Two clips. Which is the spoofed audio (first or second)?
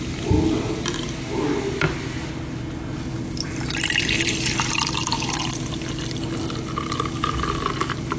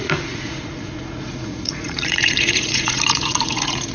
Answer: second